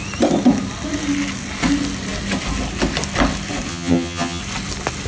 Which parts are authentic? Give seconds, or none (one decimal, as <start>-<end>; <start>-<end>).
0.0-3.7; 4.4-5.1